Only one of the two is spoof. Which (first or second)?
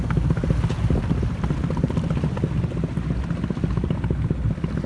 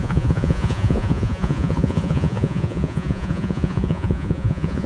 second